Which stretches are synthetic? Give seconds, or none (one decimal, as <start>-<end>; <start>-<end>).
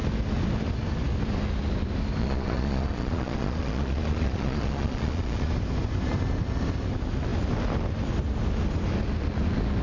2.2-5.5